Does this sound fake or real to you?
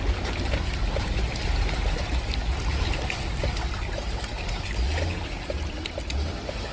real